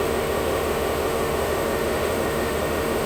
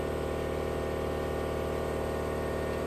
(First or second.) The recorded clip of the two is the second